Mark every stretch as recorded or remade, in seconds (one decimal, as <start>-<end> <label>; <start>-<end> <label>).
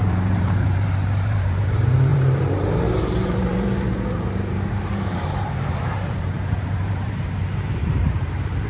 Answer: 0.0-8.7 remade